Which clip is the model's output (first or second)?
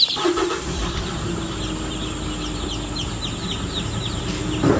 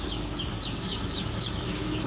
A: second